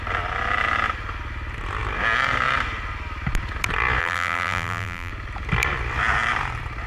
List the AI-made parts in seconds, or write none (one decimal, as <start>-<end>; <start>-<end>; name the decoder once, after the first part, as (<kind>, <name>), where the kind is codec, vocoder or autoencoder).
4.0-5.1 (vocoder, BigVGAN v2)